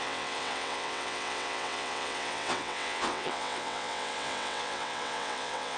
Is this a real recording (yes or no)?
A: no